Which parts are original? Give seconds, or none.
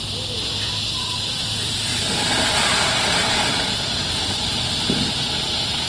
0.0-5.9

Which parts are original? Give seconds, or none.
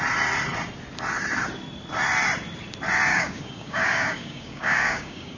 0.0-3.1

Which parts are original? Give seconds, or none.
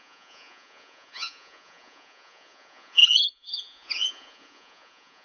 none